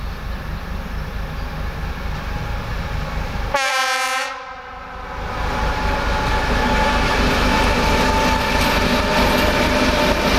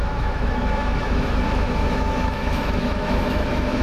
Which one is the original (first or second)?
first